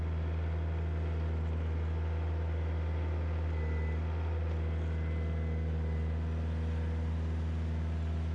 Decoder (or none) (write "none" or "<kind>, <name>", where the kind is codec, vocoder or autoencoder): none